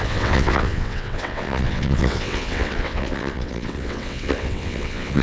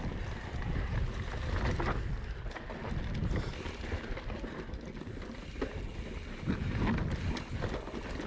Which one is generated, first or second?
first